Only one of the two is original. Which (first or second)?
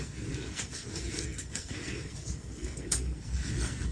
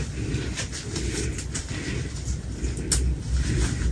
second